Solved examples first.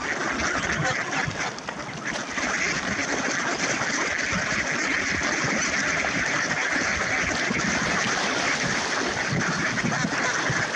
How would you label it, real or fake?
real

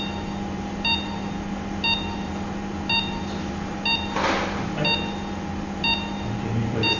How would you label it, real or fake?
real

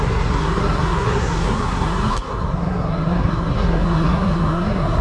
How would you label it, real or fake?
fake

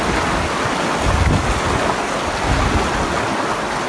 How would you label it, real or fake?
real